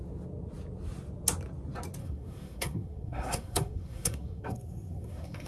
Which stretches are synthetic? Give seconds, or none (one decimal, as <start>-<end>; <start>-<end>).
2.0-5.5